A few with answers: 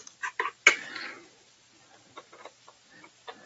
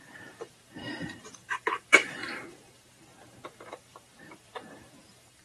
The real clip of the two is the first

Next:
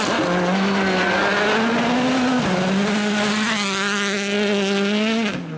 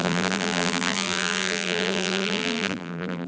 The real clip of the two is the first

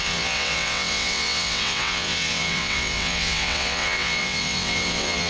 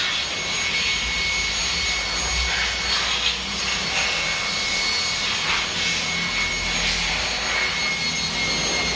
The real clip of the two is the second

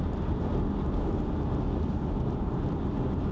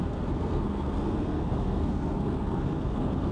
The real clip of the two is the first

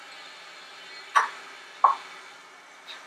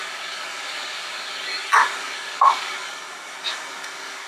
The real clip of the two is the first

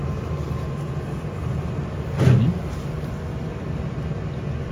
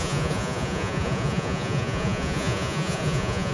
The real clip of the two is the first